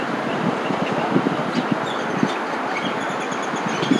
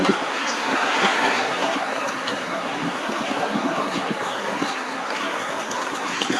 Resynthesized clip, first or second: second